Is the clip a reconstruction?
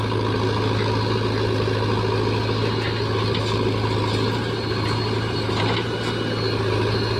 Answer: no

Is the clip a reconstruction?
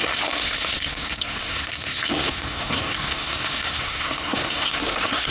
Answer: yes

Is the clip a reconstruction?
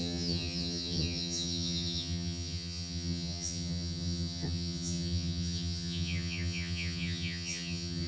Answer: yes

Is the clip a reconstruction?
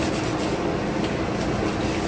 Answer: no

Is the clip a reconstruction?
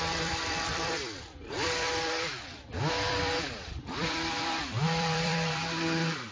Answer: yes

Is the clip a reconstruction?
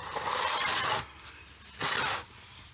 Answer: no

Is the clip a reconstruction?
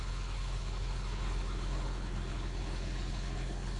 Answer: yes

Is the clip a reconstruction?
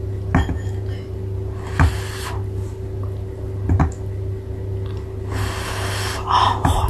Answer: no